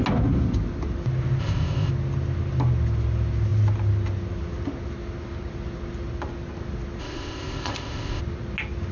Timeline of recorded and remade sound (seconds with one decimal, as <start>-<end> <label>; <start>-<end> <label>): 0.0-1.4 recorded; 1.4-1.9 remade; 1.9-7.0 recorded; 7.0-8.2 remade; 8.2-8.9 recorded